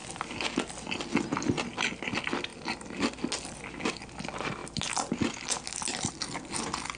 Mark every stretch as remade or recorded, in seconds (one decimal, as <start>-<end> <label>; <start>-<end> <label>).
0.0-7.0 recorded